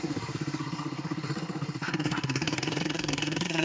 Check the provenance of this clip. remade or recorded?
remade